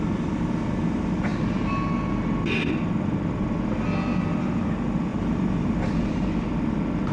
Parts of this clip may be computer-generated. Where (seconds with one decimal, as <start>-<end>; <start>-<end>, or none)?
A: none